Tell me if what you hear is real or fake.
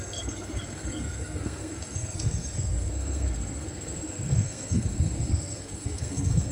fake